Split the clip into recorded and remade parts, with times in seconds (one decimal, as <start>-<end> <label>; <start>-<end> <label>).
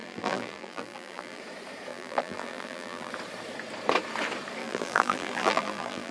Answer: 0.0-1.4 remade; 1.4-1.9 recorded; 1.9-3.1 remade; 3.1-4.6 recorded; 4.6-6.1 remade